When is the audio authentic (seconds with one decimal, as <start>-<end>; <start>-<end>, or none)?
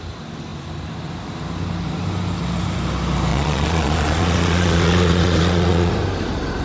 0.0-3.3; 5.9-6.6